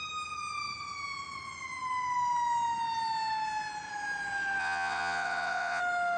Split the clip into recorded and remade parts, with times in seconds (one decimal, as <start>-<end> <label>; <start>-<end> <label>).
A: 0.0-4.6 recorded; 4.6-5.8 remade; 5.8-6.2 recorded